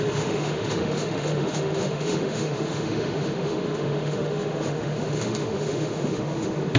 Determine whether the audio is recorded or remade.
remade